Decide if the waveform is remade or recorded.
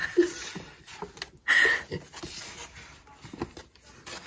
recorded